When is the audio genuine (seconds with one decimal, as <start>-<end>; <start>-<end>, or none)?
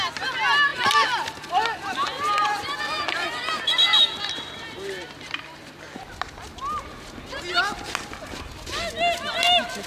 0.0-0.7; 4.0-9.9